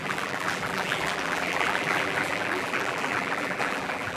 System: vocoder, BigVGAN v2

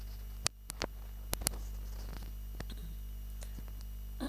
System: none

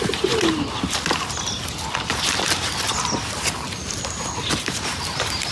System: none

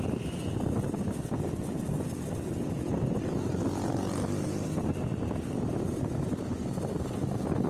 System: none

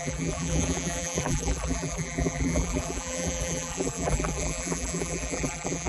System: vocoder, BigVGAN v2